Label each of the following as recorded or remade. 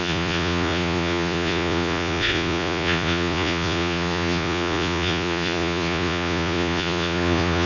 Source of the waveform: remade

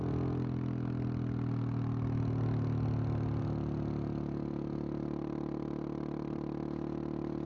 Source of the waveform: recorded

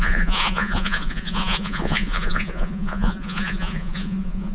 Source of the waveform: remade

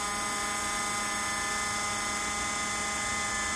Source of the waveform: recorded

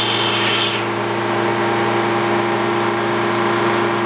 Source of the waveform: recorded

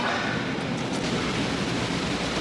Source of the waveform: recorded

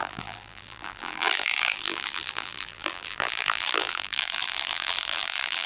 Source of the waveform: remade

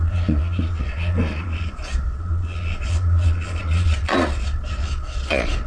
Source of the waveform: remade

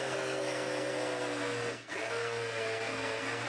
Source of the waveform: remade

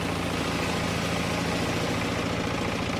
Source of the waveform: recorded